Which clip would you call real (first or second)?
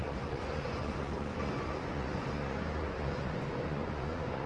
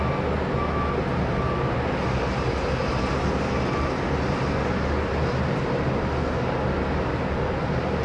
second